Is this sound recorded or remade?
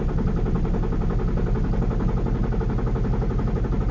recorded